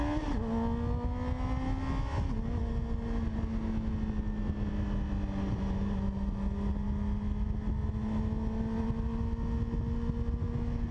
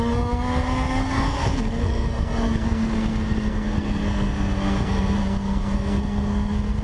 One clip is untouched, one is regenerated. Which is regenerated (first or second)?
second